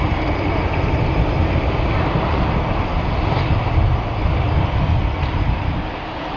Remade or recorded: recorded